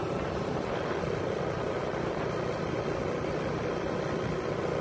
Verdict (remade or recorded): recorded